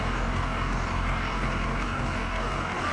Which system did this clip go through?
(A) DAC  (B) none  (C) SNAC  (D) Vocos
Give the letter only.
A